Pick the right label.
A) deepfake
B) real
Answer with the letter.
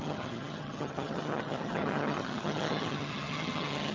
A